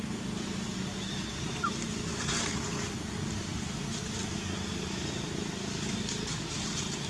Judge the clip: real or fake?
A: real